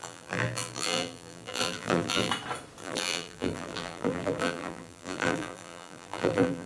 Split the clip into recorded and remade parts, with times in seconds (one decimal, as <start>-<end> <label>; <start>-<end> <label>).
0.0-2.3 remade; 2.3-2.8 recorded; 2.8-6.7 remade

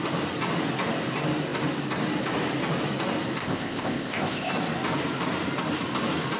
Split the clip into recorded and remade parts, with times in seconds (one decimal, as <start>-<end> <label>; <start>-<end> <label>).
0.0-3.4 recorded; 3.4-4.5 remade; 4.5-6.4 recorded

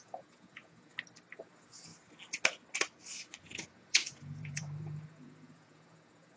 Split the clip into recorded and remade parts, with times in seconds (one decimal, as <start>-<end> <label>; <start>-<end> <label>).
0.0-0.9 remade; 0.9-1.4 recorded; 1.4-1.9 remade; 1.9-3.4 recorded; 3.4-6.4 remade

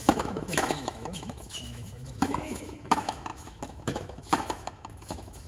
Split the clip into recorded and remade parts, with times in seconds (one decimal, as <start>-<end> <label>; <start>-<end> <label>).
0.0-5.5 remade